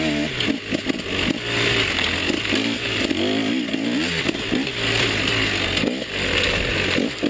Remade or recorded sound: recorded